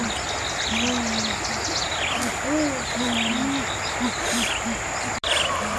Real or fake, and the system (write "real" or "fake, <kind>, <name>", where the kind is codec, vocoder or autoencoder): real